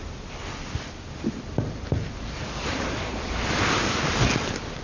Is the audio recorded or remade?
remade